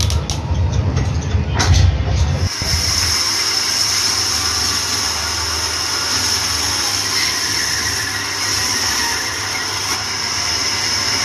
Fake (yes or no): no